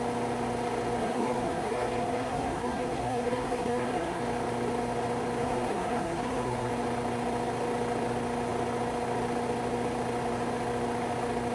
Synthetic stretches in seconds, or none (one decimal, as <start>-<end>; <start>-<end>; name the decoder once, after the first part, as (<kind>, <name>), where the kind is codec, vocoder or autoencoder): 1.0-4.2 (codec, SNAC); 5.4-6.7